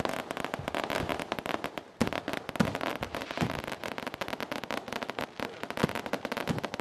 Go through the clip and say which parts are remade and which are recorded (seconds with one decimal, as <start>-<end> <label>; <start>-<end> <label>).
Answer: 0.0-2.9 recorded; 2.9-5.8 remade; 5.8-6.8 recorded